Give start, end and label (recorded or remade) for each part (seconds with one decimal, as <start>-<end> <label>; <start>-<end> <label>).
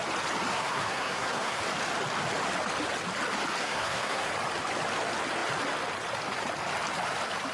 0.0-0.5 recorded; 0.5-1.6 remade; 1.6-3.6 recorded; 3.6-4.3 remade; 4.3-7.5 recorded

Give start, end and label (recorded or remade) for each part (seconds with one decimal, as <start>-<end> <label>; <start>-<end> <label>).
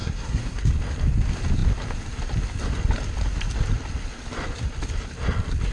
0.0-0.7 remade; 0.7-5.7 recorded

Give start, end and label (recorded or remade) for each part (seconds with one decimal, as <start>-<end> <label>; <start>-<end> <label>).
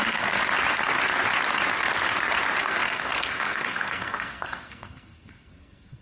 0.0-0.4 remade; 0.4-2.6 recorded; 2.6-6.0 remade